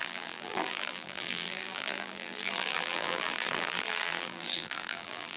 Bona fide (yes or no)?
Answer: no